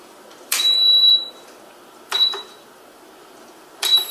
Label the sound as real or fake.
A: fake